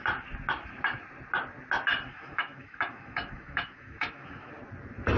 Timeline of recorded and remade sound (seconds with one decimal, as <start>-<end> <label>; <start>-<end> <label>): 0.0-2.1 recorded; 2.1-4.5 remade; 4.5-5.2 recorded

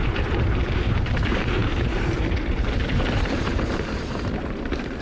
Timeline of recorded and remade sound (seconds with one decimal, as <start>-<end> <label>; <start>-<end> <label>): 0.0-5.0 remade

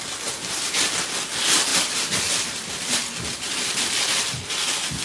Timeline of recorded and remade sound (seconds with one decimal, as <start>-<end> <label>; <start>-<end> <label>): 0.0-0.4 recorded; 0.4-1.2 remade; 1.2-1.7 recorded; 1.7-5.0 remade